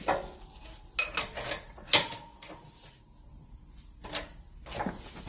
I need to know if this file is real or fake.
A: real